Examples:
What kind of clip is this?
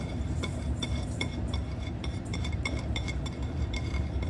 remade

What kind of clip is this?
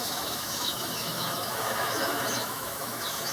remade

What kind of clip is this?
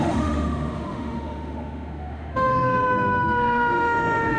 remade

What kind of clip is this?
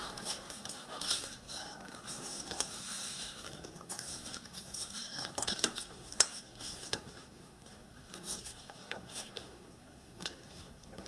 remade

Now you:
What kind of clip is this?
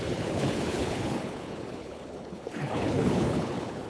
remade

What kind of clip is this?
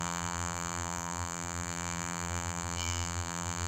remade